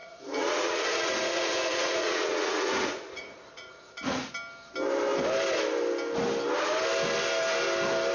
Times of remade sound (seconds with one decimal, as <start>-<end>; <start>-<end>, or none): 0.0-4.3